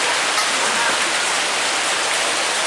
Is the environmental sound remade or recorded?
recorded